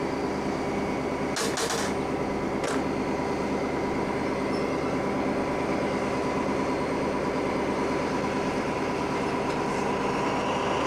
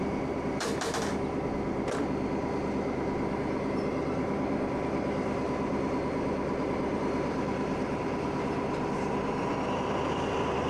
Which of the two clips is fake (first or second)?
second